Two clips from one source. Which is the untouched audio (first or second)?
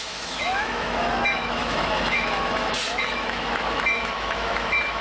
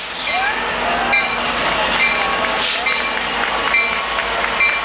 second